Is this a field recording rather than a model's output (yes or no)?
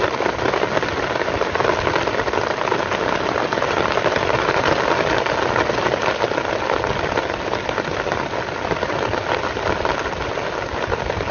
yes